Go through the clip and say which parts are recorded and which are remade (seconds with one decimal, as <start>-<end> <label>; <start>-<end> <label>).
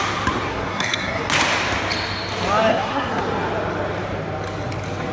0.0-0.5 recorded; 0.5-1.2 remade; 1.2-2.7 recorded; 2.7-3.2 remade; 3.2-5.1 recorded